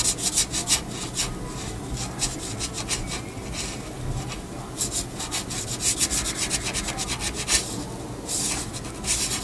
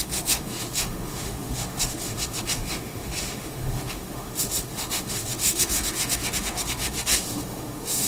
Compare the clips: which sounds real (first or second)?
first